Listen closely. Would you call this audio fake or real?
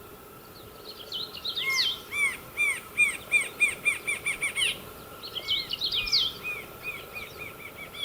real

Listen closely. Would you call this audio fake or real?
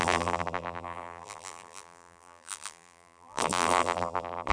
fake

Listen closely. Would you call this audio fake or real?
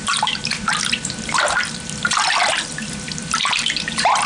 fake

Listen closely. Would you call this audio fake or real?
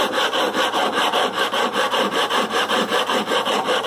fake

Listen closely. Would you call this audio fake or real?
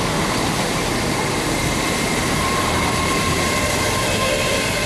fake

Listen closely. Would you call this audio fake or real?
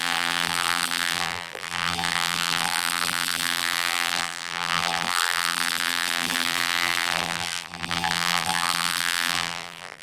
fake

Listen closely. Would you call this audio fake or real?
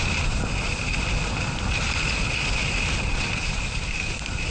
real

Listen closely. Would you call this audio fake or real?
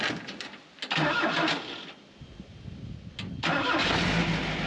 real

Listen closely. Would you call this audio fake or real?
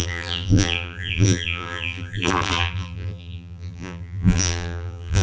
fake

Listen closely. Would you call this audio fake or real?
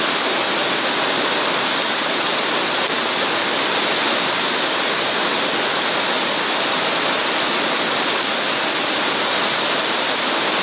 real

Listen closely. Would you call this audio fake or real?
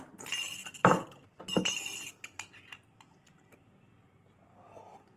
real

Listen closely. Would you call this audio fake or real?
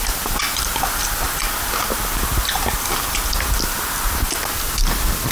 real